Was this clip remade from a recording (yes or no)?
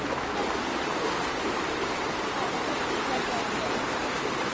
no